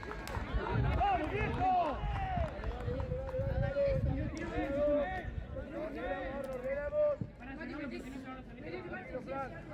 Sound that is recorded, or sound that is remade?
recorded